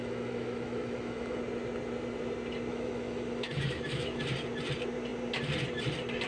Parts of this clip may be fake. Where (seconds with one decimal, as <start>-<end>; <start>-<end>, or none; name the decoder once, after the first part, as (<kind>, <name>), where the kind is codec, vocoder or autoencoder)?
0.0-1.4 (autoencoder, DAC-VAE); 2.7-4.2